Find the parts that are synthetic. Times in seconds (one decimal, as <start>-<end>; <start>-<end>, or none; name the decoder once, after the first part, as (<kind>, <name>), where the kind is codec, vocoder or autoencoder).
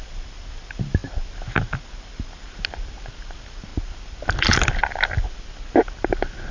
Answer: none